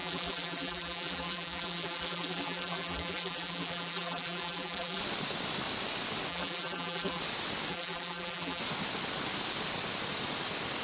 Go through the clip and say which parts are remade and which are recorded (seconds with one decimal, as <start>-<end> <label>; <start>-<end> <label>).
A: 0.0-5.0 remade; 5.0-6.3 recorded; 6.3-7.2 remade; 7.2-7.7 recorded; 7.7-8.6 remade; 8.6-10.8 recorded